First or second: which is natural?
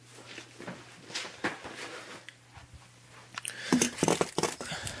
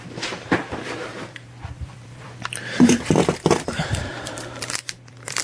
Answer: first